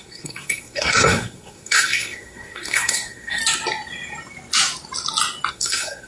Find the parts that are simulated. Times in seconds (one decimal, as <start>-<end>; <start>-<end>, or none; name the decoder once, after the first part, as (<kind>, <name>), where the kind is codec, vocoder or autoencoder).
0.0-3.4 (codec, SNAC); 5.5-6.1